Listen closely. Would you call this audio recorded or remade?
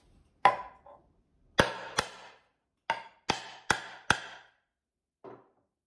recorded